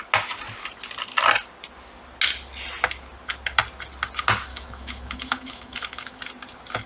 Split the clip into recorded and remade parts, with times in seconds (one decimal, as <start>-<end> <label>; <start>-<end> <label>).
0.0-4.5 recorded; 4.5-6.2 remade; 6.2-6.9 recorded